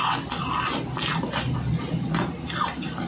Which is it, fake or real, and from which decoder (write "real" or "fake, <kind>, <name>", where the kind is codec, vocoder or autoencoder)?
real